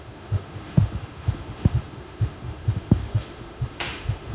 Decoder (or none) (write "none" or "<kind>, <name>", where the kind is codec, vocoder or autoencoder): autoencoder, DAC-VAE